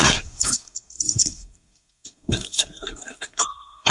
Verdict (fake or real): fake